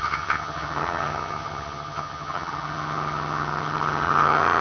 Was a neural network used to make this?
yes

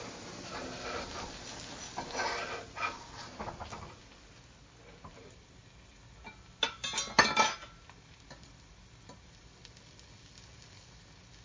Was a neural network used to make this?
no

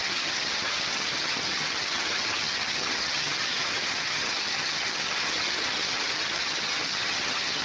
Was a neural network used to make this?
yes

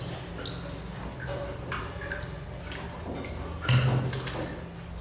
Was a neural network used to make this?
no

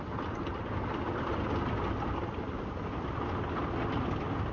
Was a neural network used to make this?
no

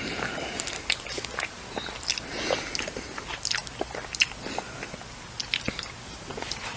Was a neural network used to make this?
no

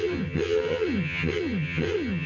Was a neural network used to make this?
yes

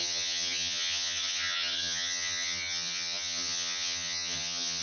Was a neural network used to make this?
yes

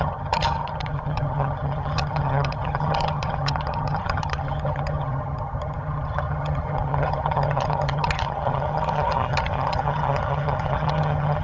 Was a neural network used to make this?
yes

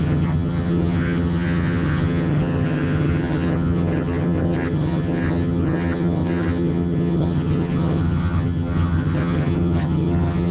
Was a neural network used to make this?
yes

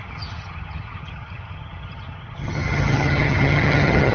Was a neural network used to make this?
yes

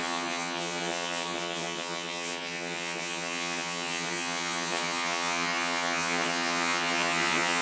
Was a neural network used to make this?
yes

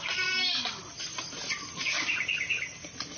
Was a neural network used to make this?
no